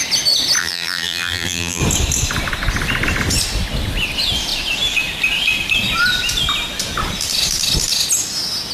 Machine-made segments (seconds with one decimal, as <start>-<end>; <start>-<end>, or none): 0.6-1.8